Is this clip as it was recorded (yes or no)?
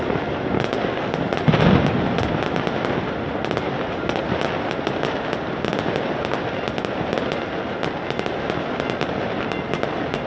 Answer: yes